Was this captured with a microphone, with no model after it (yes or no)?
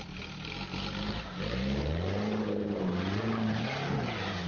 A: yes